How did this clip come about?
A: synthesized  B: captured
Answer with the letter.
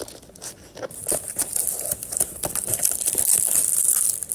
B